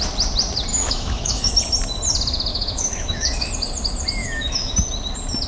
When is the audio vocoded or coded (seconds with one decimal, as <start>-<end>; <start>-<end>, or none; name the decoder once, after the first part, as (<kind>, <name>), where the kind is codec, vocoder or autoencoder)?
0.7-1.5 (autoencoder, DAC-VAE); 2.5-3.5; 4.2-4.7